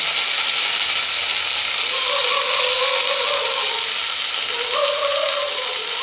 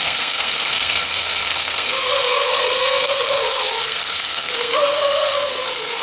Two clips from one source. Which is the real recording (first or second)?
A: first